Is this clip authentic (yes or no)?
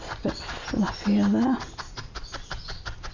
yes